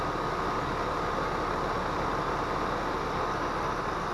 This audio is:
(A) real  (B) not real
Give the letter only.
A